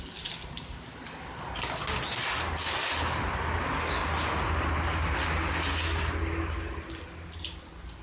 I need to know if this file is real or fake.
real